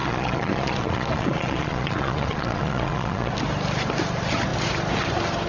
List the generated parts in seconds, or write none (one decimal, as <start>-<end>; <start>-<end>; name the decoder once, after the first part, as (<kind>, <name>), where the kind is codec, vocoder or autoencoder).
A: 0.0-3.3 (vocoder, Vocos)